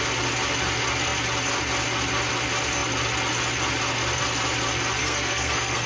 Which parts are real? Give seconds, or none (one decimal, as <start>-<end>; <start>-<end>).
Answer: 0.0-5.0